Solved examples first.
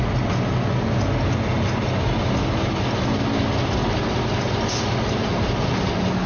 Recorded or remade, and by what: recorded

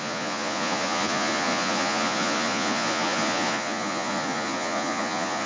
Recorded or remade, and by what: remade, vocoder, Vocos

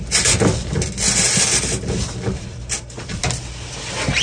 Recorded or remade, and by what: recorded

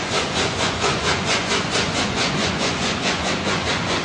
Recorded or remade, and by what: remade, vocoder, Vocos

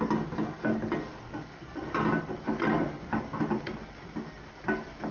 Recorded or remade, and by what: recorded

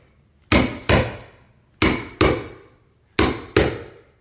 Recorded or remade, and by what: recorded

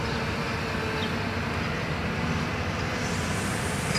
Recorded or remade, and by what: recorded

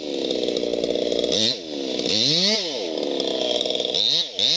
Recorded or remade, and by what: recorded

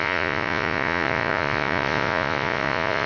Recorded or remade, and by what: remade, vocoder, Vocos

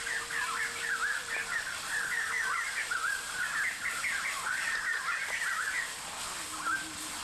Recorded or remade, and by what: recorded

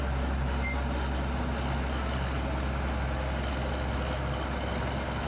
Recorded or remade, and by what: recorded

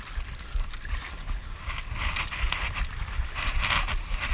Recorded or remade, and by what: recorded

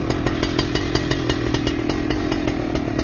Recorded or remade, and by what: recorded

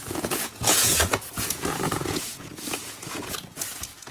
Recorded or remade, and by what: remade, vocoder, Vocos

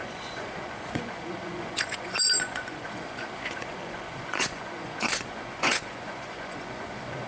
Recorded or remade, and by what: remade, vocoder, Vocos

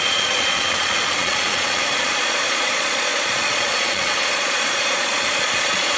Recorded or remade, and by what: remade, vocoder, Vocos